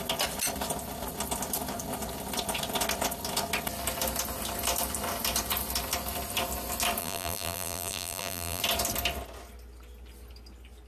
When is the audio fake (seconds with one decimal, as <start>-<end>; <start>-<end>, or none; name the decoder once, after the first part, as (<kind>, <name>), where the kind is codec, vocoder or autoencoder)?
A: 7.0-8.6 (vocoder, BigVGAN v2)